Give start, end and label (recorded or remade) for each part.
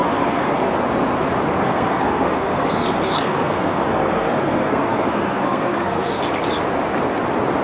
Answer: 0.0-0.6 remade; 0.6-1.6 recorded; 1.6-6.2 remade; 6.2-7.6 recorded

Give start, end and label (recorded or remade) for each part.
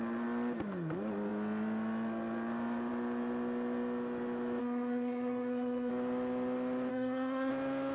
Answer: 0.0-4.6 recorded; 4.6-5.9 remade; 5.9-6.9 recorded; 6.9-7.5 remade; 7.5-7.9 recorded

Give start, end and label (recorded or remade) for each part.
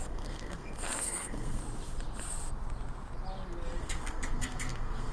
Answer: 0.0-1.6 remade; 1.6-3.8 recorded; 3.8-5.1 remade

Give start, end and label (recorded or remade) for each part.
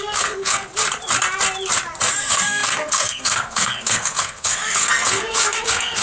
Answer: 0.0-0.7 remade; 0.7-2.2 recorded; 2.2-6.0 remade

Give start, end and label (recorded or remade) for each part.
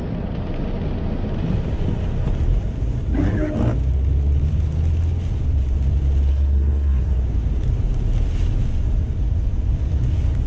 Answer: 0.0-6.3 recorded; 6.3-7.2 remade; 7.2-10.5 recorded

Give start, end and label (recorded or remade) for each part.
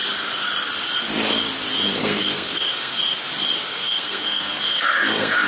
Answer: 0.0-2.0 recorded; 2.0-3.0 remade; 3.0-3.6 recorded; 3.6-5.5 remade